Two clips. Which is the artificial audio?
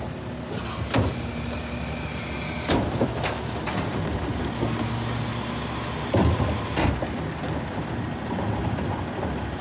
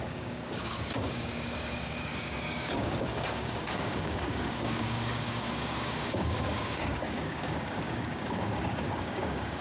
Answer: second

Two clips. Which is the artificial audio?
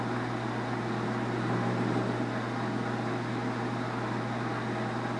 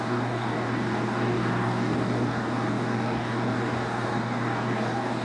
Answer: second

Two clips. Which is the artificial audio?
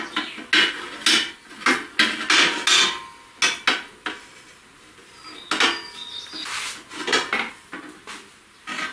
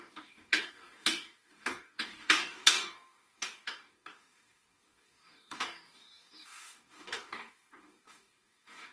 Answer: second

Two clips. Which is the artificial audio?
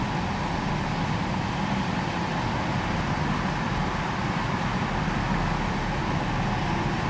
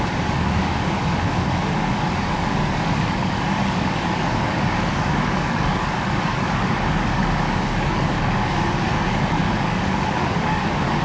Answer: second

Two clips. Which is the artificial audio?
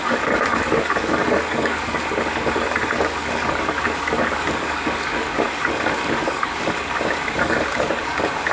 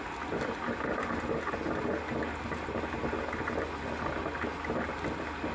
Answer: first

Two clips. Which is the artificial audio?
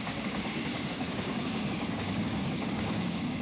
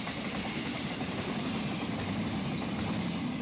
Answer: first